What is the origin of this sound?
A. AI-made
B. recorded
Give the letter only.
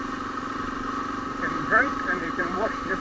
A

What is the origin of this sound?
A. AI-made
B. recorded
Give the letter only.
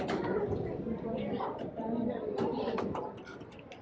A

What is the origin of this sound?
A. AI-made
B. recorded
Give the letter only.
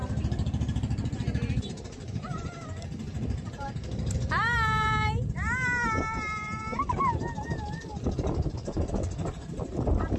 A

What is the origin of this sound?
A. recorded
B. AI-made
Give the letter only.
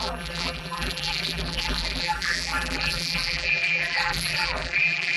B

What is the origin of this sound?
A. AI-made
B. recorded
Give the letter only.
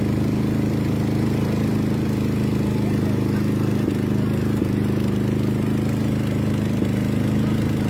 B